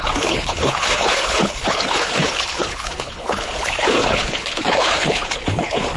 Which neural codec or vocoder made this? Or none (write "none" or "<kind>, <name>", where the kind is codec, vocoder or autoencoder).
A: codec, HILCodec